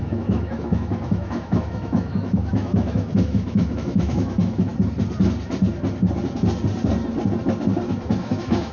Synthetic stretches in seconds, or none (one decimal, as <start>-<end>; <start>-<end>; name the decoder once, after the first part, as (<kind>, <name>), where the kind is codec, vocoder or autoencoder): 0.0-4.7 (autoencoder, DAC-VAE); 8.2-8.7